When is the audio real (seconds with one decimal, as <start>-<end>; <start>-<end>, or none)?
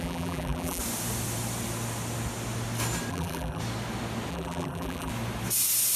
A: 0.8-3.1; 3.6-4.3; 5.1-6.0